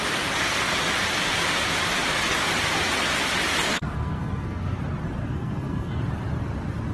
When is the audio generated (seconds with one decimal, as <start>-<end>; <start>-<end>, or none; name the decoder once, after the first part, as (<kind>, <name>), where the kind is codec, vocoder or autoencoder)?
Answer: 3.7-4.8 (codec, SNAC); 5.2-6.0